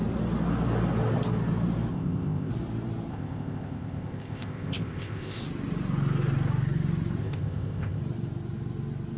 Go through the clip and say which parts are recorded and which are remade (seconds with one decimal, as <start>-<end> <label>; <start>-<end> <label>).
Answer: 0.0-1.9 recorded; 1.9-2.5 remade; 2.5-3.1 recorded; 3.1-5.4 remade; 5.4-7.2 recorded; 7.2-8.0 remade; 8.0-9.2 recorded